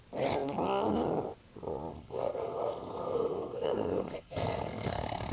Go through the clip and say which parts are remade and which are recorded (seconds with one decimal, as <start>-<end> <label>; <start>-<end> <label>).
0.0-1.9 recorded; 1.9-5.3 remade